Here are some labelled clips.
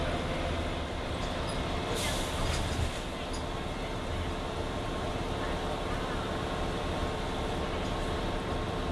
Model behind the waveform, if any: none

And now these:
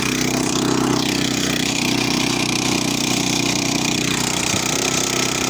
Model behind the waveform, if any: none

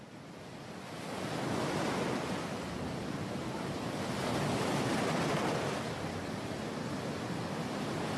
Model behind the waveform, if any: none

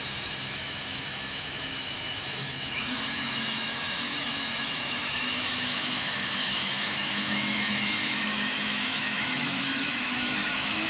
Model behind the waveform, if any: autoencoder, DAC-VAE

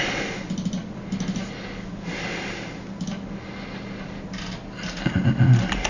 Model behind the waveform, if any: none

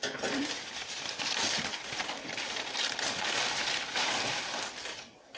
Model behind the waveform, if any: vocoder, BigVGAN v2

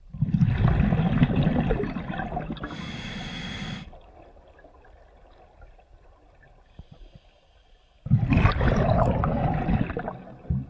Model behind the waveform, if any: none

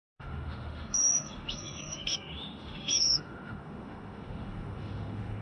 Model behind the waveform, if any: autoencoder, DAC-VAE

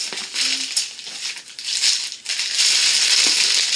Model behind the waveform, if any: none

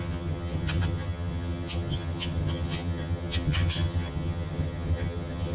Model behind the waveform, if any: vocoder, HiFi-GAN